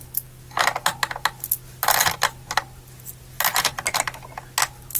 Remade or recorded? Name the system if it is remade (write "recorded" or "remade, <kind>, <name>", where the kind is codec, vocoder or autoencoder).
recorded